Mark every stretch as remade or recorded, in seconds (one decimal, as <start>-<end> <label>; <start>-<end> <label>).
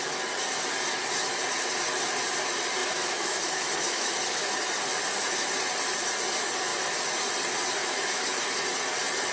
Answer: 0.0-2.8 recorded; 2.8-4.5 remade; 4.5-7.8 recorded; 7.8-8.5 remade; 8.5-9.3 recorded